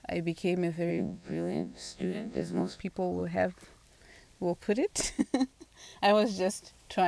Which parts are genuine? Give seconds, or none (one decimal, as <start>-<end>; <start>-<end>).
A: 0.0-0.9; 2.8-7.1